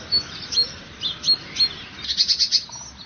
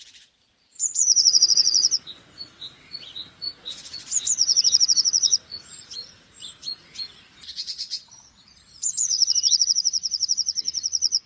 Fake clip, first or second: second